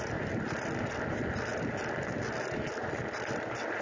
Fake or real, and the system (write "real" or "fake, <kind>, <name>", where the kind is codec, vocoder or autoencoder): real